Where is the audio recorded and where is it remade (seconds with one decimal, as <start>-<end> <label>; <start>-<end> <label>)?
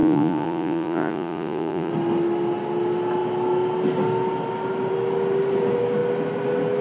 0.0-1.9 remade; 1.9-6.8 recorded